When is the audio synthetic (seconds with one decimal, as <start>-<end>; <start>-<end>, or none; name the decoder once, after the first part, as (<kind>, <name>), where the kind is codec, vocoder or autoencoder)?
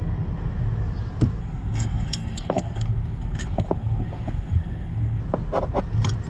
1.4-5.2 (codec, SNAC)